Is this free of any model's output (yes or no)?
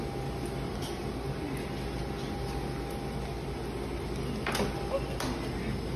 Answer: yes